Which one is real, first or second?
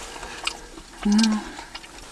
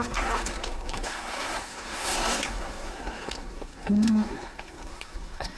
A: first